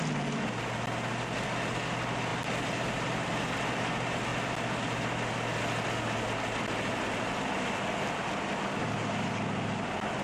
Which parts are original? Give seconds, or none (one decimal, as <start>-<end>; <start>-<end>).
0.0-10.2